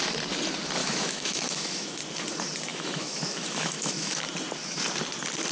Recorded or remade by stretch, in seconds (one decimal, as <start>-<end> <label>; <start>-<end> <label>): 0.0-0.8 recorded; 0.8-2.0 remade; 2.0-2.7 recorded; 2.7-4.2 remade; 4.2-5.5 recorded